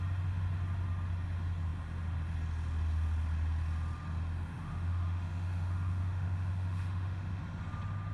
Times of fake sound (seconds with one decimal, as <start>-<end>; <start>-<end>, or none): 4.5-7.4